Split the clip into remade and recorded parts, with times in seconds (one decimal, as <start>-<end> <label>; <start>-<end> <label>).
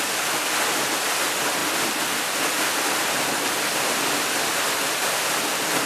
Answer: 0.0-5.9 recorded